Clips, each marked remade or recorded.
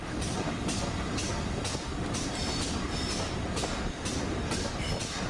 recorded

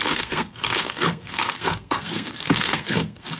remade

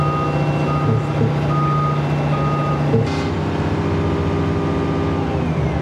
recorded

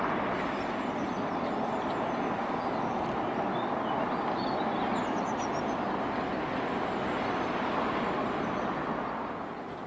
recorded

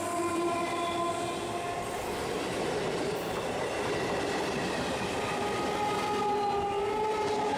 recorded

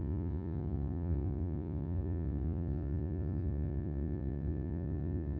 remade